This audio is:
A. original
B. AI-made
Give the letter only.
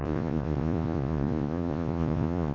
B